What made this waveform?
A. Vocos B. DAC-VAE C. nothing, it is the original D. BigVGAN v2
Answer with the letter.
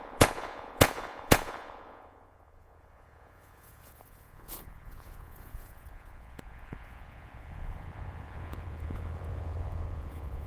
A